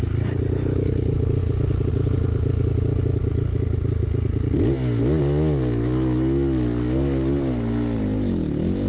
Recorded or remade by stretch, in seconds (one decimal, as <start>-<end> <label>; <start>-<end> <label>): 0.0-8.9 recorded